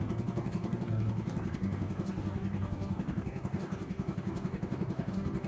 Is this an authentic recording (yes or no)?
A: no